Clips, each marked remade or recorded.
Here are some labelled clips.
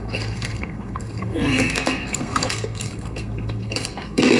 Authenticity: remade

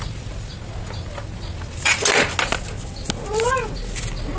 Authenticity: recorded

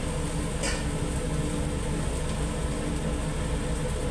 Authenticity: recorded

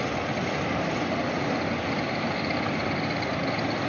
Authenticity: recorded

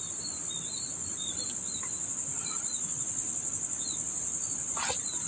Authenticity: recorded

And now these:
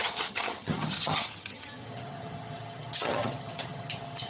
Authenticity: remade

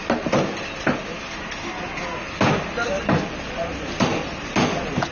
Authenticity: recorded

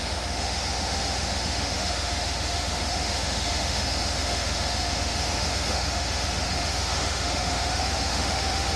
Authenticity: remade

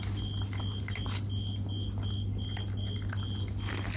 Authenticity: recorded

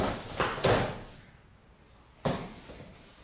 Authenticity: recorded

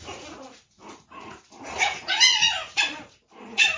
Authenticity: remade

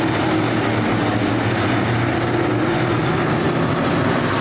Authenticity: recorded